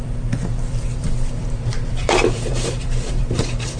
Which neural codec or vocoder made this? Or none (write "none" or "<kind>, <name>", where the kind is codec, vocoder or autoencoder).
vocoder, BigVGAN v2